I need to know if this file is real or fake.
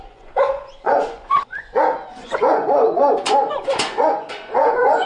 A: fake